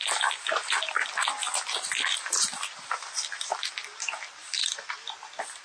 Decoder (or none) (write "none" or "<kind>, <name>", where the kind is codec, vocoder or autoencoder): none